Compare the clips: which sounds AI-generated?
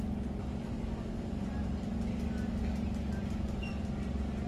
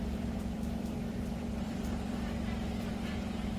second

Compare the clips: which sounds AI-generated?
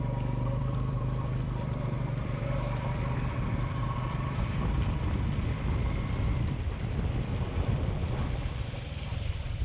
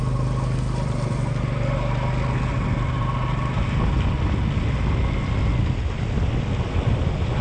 first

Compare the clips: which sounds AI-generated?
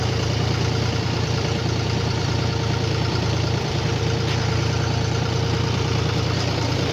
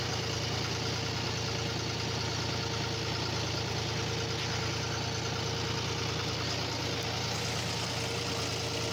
first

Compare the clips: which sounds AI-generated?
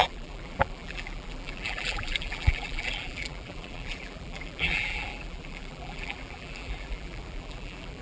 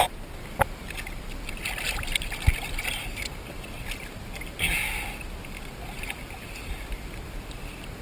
first